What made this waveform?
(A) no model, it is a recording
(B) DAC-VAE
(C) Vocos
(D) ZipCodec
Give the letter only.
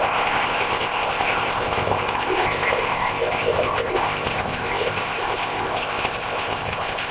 D